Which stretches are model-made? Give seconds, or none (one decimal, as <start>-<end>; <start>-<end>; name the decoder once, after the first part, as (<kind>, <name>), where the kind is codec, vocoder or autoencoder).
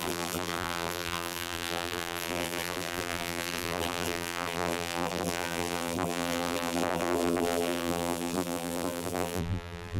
0.0-10.0 (vocoder, BigVGAN v2)